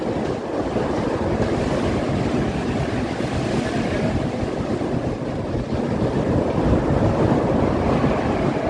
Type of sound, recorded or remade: recorded